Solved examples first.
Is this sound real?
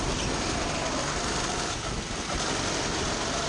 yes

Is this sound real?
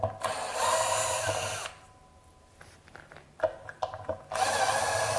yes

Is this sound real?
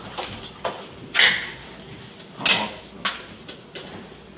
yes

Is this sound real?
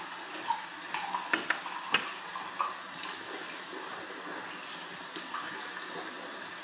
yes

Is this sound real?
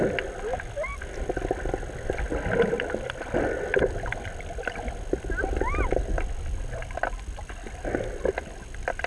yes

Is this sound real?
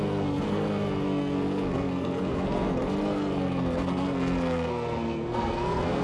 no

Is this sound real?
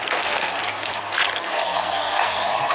no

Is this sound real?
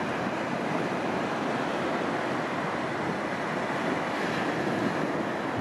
yes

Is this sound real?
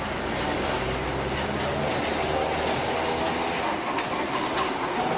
yes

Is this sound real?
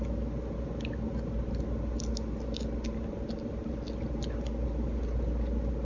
yes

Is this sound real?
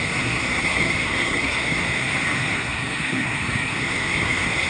no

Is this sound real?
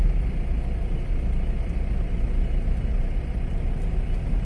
yes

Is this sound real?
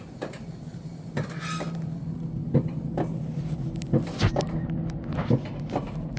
yes